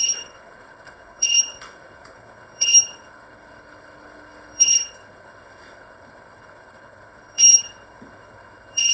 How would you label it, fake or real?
fake